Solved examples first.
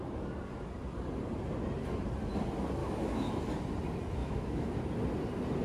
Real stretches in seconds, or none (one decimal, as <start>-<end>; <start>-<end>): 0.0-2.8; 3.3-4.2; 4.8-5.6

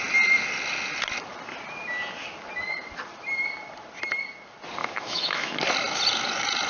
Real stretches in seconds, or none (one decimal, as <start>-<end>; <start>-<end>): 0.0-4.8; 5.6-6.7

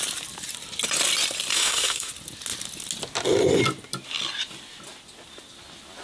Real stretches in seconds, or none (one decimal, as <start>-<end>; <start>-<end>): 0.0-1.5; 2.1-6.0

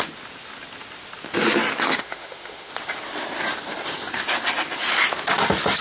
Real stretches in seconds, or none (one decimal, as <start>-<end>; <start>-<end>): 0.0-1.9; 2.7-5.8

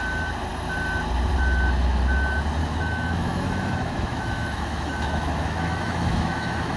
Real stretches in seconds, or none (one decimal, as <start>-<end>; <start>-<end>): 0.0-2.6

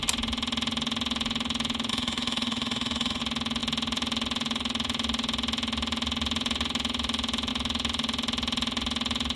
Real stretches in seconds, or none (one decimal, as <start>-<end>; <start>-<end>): 0.0-1.9; 3.2-9.4